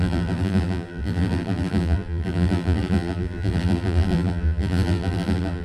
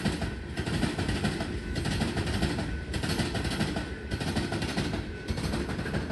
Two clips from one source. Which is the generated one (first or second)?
first